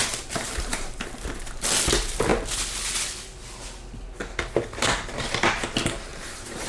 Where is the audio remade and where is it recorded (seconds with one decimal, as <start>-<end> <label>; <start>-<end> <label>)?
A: 0.0-1.3 remade; 1.3-6.1 recorded; 6.1-6.7 remade